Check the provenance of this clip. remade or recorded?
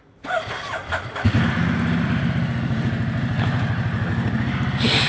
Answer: recorded